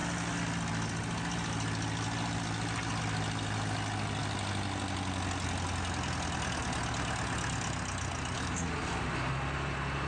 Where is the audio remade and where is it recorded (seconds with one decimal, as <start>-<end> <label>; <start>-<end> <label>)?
0.0-10.1 recorded